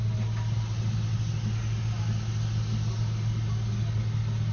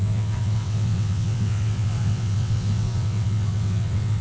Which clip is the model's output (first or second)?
second